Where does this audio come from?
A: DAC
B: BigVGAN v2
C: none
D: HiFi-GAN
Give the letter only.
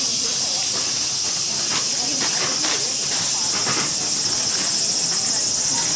C